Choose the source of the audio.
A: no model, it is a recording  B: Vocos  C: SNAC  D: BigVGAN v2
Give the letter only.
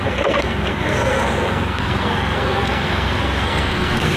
C